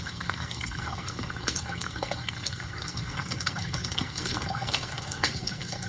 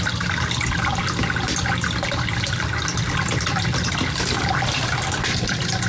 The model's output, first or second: first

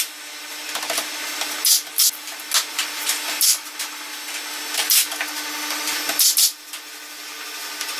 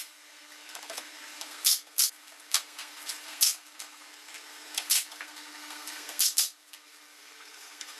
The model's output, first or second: second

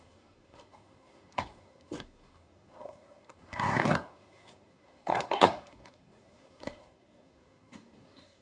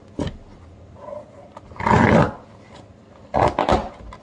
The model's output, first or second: first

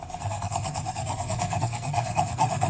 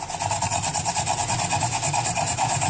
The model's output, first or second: first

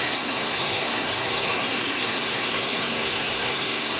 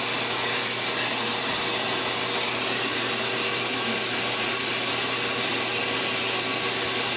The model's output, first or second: first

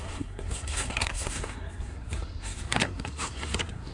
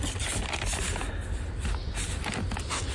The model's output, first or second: first